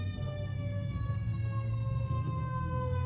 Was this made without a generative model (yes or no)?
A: no